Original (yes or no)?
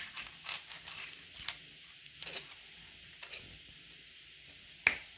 yes